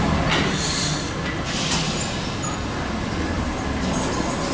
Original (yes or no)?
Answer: yes